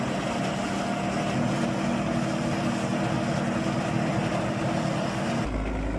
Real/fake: real